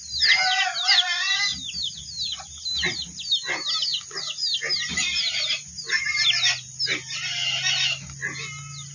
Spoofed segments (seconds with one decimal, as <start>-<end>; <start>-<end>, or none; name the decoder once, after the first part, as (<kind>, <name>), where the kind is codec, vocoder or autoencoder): none

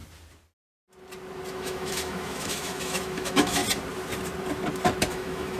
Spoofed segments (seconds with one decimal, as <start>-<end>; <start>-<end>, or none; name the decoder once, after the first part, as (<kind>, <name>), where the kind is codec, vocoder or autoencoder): 1.5-3.6 (autoencoder, DAC-VAE); 5.1-5.6